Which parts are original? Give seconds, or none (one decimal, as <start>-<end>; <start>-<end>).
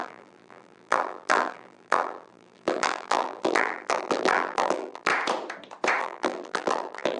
5.1-6.0